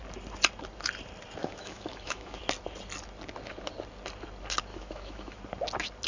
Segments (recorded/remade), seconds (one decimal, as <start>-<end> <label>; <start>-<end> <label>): 0.0-1.4 recorded; 1.4-2.4 remade; 2.4-4.7 recorded; 4.7-5.4 remade; 5.4-6.1 recorded